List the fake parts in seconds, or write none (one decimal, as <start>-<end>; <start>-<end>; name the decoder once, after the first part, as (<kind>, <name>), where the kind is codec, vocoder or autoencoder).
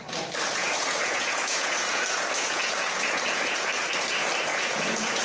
0.6-3.7 (vocoder, Vocos); 4.5-5.2